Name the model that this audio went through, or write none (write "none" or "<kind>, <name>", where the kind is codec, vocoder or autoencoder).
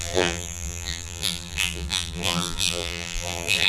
vocoder, BigVGAN v2